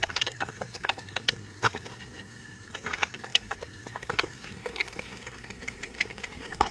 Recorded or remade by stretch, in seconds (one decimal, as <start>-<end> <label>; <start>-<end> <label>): 0.0-6.7 remade